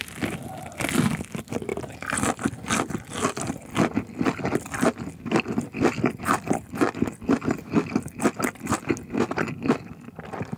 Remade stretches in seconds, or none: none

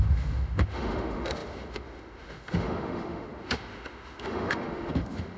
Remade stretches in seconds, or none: 0.0-5.4

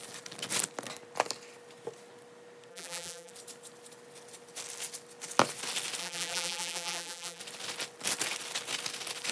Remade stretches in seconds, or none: 2.7-3.3; 6.0-7.4

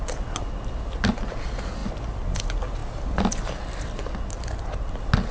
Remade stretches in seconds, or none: none

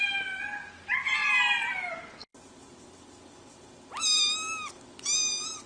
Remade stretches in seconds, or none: none

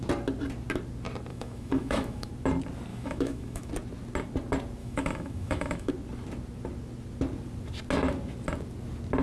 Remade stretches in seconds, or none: 1.3-2.3; 2.9-3.7; 4.8-5.9

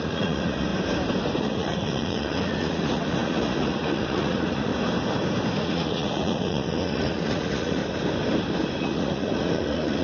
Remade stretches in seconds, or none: 0.0-0.7; 1.4-4.7; 5.6-7.8; 8.8-10.0

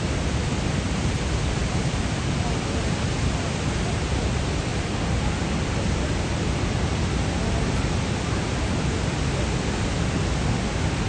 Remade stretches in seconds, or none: 4.7-7.0